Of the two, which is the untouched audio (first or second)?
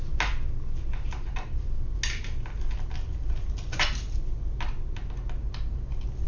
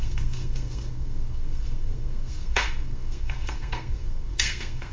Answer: first